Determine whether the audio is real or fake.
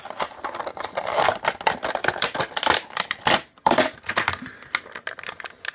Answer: real